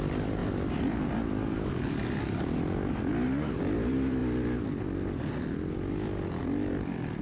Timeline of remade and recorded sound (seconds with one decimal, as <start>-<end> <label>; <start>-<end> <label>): 0.0-0.4 remade; 0.4-3.6 recorded; 3.6-4.2 remade; 4.2-6.7 recorded; 6.7-7.2 remade